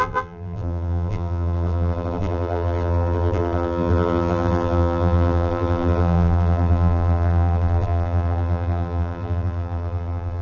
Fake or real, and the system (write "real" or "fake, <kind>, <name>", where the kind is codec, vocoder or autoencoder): fake, vocoder, BigVGAN v2